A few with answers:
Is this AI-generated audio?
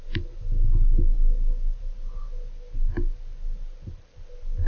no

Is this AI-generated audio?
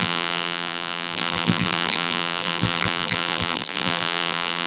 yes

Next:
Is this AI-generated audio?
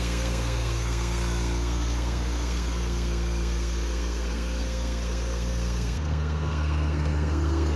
yes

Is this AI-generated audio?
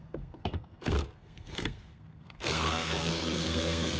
yes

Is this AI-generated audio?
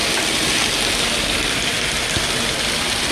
no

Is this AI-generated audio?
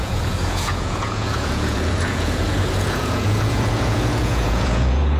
yes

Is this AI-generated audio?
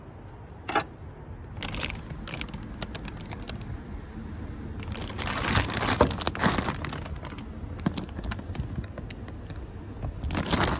no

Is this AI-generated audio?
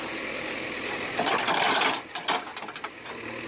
no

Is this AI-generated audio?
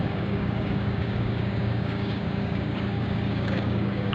yes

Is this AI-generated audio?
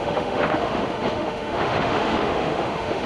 yes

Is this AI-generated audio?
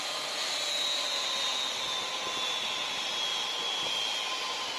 no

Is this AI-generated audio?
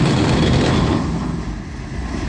no